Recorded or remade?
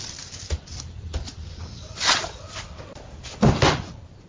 recorded